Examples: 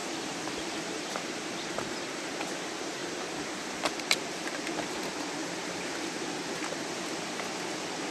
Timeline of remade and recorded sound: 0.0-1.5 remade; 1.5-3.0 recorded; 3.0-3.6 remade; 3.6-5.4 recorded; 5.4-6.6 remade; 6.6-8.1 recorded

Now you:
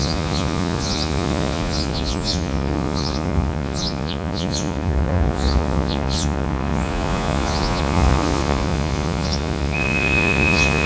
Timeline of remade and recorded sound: 0.0-10.9 remade

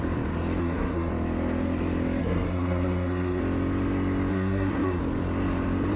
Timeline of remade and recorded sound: 0.0-0.6 recorded; 0.6-1.1 remade; 1.1-2.2 recorded; 2.2-3.4 remade; 3.4-4.3 recorded; 4.3-5.0 remade; 5.0-6.0 recorded